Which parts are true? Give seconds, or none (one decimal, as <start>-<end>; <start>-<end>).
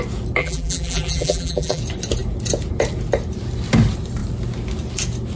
0.0-0.4; 1.8-5.4